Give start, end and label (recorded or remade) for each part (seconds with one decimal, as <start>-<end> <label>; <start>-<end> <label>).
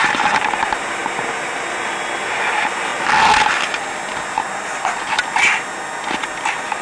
0.0-6.8 recorded